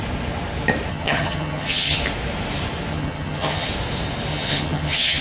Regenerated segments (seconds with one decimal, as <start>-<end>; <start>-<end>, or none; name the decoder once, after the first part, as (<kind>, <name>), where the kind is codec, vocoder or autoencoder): 0.9-2.0 (vocoder, HiFi-GAN); 2.9-3.7; 4.3-5.2